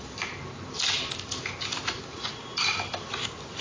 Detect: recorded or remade recorded